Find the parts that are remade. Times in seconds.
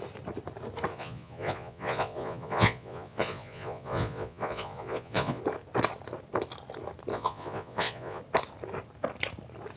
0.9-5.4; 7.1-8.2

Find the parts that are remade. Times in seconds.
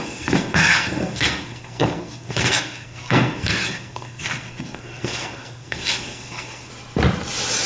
0.0-6.7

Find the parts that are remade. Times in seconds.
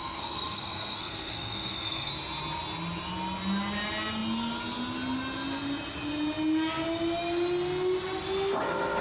0.0-2.1